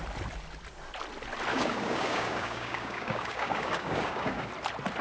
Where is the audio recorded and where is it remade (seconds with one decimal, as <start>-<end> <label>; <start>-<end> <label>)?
0.0-1.5 recorded; 1.5-4.5 remade; 4.5-5.0 recorded